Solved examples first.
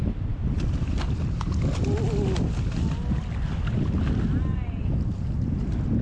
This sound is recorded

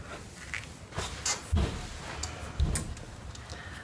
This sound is recorded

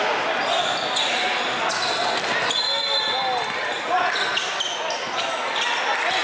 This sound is recorded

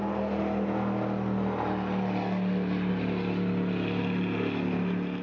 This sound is recorded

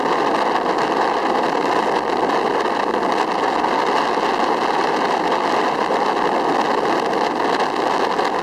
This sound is recorded